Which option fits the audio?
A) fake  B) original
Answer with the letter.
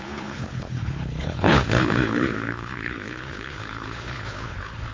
A